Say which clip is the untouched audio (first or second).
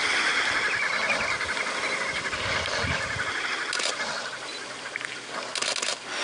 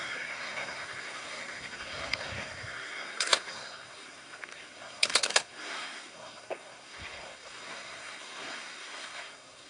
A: first